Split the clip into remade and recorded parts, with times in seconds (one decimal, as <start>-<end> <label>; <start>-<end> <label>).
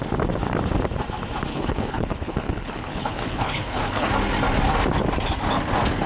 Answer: 0.0-1.5 recorded; 1.5-4.1 remade; 4.1-6.1 recorded